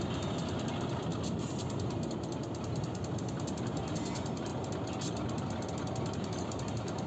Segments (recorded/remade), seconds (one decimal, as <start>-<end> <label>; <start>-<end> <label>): 0.0-7.1 recorded